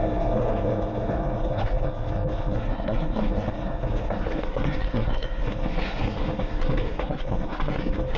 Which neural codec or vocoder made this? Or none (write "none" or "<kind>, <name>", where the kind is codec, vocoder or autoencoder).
codec, SNAC